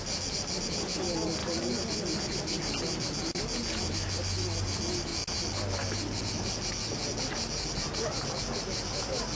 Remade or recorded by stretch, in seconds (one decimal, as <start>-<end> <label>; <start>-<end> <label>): 0.0-9.3 recorded